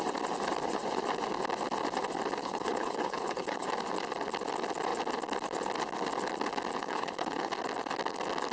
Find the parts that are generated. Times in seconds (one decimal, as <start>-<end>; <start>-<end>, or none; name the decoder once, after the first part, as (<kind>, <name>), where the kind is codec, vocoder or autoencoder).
2.4-3.7 (codec, HILCodec); 6.8-7.5